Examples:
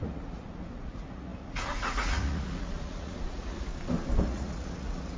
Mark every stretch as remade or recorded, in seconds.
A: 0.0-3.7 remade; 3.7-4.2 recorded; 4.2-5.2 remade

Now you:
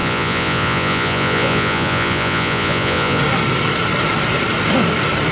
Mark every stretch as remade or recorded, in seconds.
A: 0.0-3.2 remade; 3.2-5.3 recorded

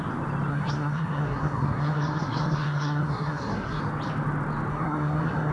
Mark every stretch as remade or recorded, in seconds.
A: 0.0-0.5 recorded; 0.5-3.8 remade; 3.8-4.7 recorded; 4.7-5.5 remade

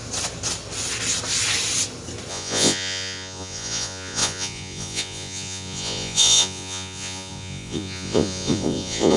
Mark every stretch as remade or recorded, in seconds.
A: 0.0-2.3 recorded; 2.3-9.2 remade